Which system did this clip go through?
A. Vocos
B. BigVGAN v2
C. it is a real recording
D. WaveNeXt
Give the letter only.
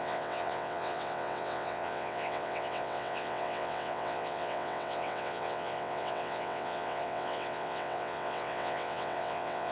D